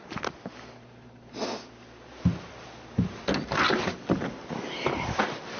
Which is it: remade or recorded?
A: recorded